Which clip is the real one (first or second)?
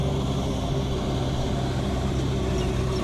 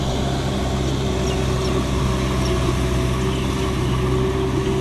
second